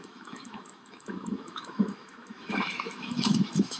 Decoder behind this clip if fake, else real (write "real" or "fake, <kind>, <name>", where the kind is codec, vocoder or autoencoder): fake, autoencoder, DAC-VAE